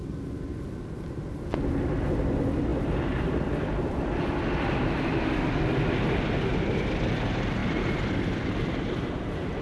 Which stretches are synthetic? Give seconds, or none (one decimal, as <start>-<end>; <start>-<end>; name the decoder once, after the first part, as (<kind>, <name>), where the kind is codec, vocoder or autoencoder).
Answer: none